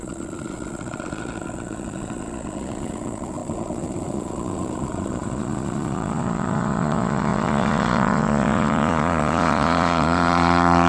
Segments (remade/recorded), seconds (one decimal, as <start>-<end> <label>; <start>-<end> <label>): 0.0-10.9 remade